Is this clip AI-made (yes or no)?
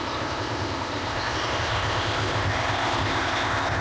yes